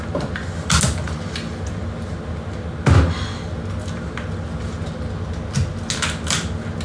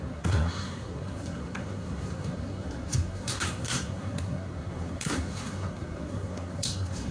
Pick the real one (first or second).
first